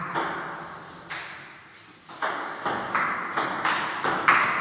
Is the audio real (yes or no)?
yes